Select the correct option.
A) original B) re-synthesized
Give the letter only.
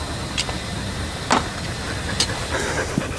A